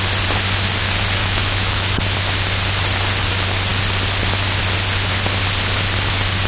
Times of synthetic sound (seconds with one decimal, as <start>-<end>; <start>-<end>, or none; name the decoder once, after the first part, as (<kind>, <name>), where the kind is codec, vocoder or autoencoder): 1.2-2.0 (autoencoder, DAC-VAE)